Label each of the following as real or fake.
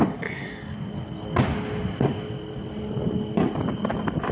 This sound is real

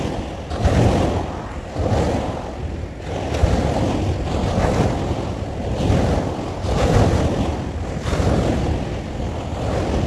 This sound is real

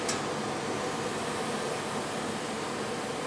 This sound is real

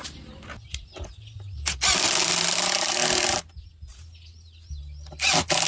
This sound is real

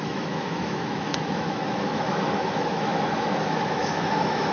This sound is fake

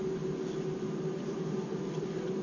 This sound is real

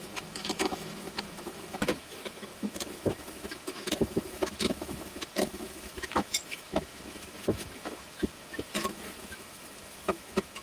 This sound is fake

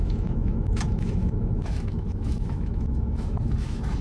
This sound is fake